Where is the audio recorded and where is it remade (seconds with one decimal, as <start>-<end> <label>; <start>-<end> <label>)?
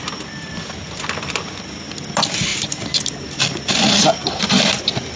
0.0-5.2 recorded